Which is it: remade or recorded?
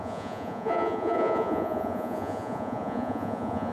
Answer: remade